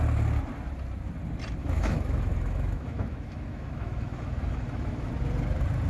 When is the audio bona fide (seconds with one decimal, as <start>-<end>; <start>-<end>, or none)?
0.0-1.6; 5.1-5.9